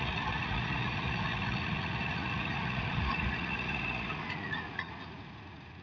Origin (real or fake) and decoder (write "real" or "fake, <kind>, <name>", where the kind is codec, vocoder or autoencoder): fake, vocoder, Vocos